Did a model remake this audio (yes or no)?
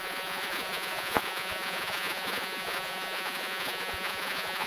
yes